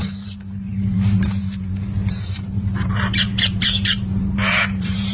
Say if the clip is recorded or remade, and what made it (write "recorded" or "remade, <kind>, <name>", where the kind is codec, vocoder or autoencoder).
remade, vocoder, BigVGAN v2